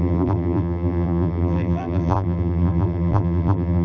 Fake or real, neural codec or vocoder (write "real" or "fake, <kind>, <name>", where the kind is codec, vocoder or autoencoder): fake, vocoder, BigVGAN v2